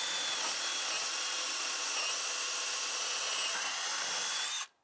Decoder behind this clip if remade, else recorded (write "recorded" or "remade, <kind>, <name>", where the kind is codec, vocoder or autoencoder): recorded